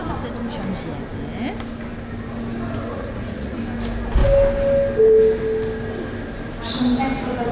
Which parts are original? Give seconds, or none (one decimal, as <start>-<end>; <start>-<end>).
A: 0.0-2.9; 3.6-7.5